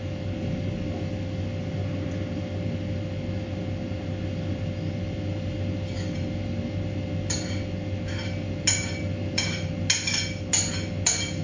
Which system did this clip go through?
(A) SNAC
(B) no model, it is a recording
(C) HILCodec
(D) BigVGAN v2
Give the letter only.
B